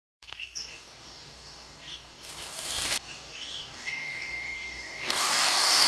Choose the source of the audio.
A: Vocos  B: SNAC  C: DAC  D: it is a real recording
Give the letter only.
C